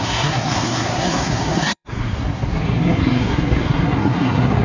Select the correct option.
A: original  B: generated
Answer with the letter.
B